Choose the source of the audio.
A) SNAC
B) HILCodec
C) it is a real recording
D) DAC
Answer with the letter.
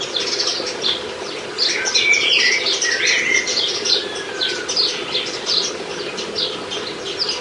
C